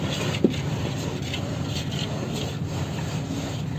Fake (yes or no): no